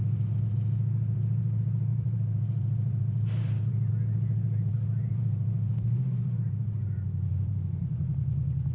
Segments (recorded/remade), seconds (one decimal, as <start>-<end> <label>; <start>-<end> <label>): 0.0-1.9 recorded; 1.9-3.9 remade; 3.9-4.7 recorded; 4.7-8.1 remade; 8.1-8.7 recorded